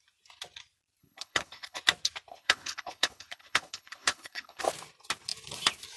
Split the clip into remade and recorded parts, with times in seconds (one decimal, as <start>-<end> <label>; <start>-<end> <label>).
0.0-1.0 recorded; 1.0-1.8 remade; 1.8-2.3 recorded; 2.3-4.6 remade; 4.6-6.0 recorded